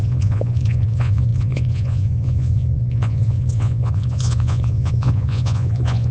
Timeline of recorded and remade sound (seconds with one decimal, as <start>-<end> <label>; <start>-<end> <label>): 0.0-6.1 remade